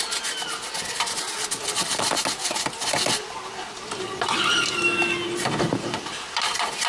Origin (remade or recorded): recorded